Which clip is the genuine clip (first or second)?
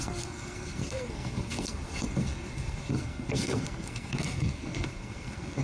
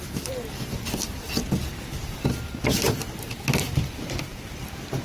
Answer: second